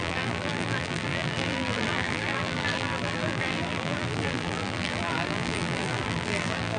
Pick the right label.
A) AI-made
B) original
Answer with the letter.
A